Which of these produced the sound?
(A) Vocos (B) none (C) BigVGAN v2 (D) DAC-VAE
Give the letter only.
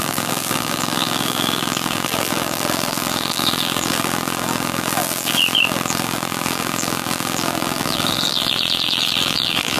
C